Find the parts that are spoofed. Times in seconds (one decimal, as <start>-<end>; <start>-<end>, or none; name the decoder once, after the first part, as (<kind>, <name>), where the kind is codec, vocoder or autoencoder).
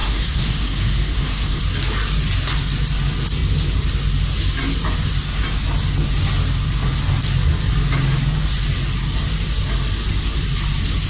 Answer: 0.0-1.6 (codec, SNAC)